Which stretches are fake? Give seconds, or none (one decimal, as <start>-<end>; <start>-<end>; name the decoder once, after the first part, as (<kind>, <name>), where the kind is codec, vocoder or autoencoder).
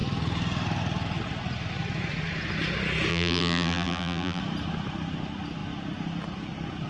3.1-4.4 (vocoder, BigVGAN v2)